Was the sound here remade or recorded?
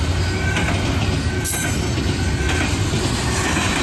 recorded